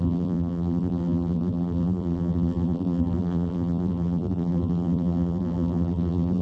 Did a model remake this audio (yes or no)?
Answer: yes